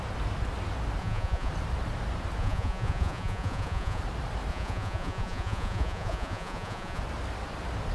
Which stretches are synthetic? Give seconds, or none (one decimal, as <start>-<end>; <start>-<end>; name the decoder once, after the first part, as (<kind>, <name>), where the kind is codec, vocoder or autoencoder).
1.0-1.5 (vocoder, Vocos); 2.4-4.0; 4.5-7.0